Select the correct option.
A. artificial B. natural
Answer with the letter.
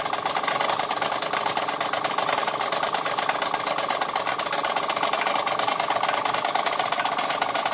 B